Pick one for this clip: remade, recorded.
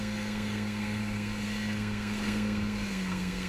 remade